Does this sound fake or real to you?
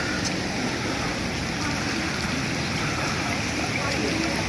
real